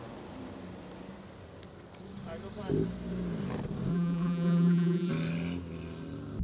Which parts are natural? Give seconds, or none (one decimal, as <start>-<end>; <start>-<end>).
0.0-3.9; 5.1-6.4